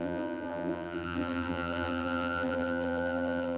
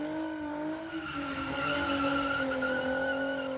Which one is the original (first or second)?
second